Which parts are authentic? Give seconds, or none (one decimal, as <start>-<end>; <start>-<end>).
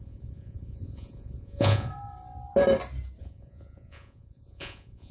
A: 1.9-3.2